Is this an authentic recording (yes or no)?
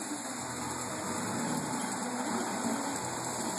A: yes